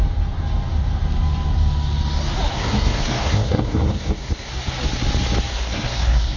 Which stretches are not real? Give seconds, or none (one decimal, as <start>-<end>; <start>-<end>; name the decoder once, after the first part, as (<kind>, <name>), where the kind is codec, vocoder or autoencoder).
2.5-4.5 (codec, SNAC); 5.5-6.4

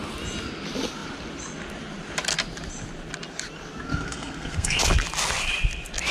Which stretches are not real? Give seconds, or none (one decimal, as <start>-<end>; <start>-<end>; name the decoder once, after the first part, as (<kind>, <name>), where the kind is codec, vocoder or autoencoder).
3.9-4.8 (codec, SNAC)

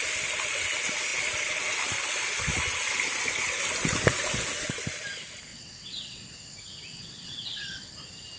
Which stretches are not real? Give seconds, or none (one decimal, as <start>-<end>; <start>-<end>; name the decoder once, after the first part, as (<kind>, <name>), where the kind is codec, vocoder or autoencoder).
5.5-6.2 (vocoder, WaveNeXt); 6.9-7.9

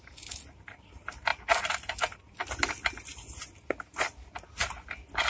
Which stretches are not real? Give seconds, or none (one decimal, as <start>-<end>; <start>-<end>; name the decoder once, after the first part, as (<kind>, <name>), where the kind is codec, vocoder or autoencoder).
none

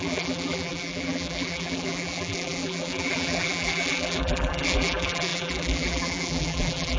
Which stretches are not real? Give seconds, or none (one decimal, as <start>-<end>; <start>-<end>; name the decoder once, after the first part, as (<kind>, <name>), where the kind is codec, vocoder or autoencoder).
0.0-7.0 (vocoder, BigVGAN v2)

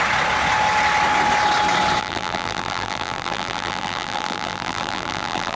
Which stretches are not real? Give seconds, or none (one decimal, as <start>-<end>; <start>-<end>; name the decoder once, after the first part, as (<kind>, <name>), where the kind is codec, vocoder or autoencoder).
2.0-5.6 (vocoder, BigVGAN v2)

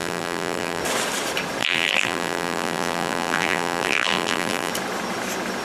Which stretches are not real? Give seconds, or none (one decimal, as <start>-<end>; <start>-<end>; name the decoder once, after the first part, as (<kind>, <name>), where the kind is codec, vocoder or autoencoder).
0.0-0.8 (vocoder, BigVGAN v2); 1.6-4.7